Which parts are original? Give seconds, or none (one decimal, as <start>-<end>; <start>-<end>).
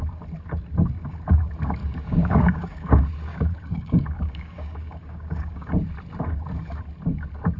0.0-1.8; 2.9-3.3; 5.7-7.6